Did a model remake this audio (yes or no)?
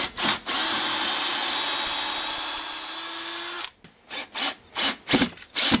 no